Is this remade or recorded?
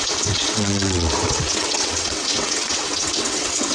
remade